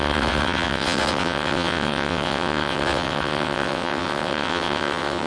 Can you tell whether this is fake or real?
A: fake